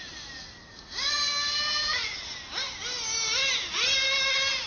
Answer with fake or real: real